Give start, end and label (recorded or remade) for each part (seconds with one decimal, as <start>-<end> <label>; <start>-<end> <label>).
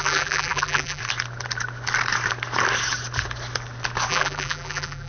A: 0.0-1.0 remade; 1.0-4.1 recorded; 4.1-5.1 remade